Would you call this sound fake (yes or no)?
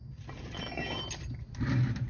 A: no